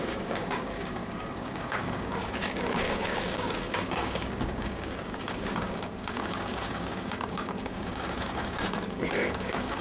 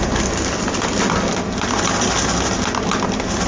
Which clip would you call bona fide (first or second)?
second